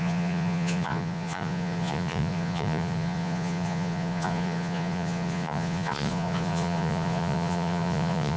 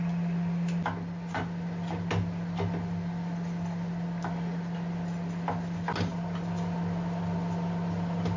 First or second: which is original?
second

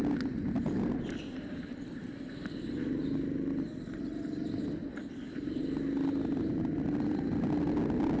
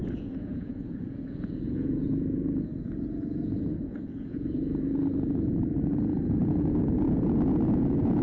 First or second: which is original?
first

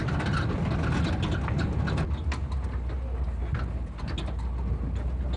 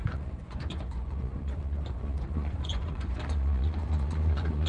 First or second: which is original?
first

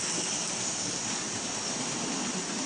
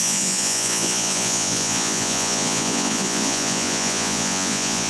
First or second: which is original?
first